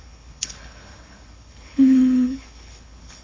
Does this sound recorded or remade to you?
remade